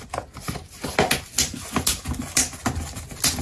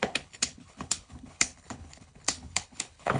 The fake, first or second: second